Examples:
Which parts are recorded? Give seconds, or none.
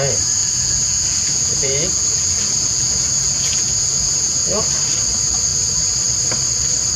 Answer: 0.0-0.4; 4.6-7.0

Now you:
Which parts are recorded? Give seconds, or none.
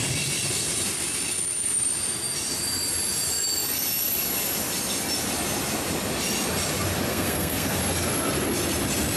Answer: 0.0-7.1; 7.8-9.2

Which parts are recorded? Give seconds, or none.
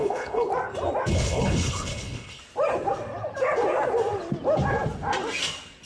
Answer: 0.5-1.1; 2.4-5.9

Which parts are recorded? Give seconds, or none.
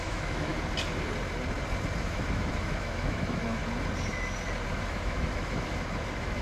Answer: 0.5-2.0; 3.6-4.7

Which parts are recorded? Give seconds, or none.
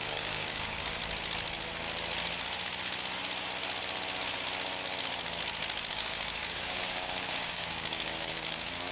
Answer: 1.0-5.9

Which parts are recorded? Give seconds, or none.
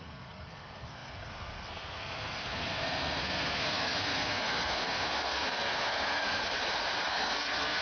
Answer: 6.4-7.1